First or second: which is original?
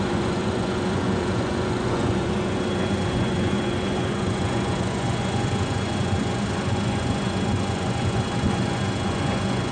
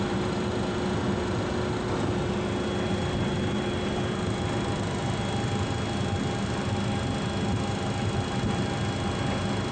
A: second